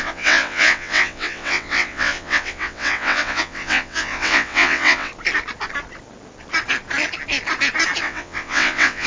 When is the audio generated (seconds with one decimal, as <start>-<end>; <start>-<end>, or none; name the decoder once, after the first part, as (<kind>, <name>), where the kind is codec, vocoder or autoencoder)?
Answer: 0.0-5.1 (vocoder, WaveNeXt); 8.0-9.1